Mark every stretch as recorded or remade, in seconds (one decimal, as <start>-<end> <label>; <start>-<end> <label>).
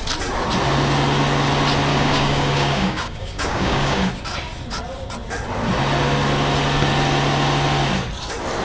0.0-1.9 recorded; 1.9-4.1 remade; 4.1-8.6 recorded